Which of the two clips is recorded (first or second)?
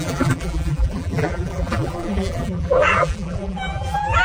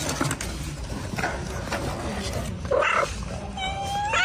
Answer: second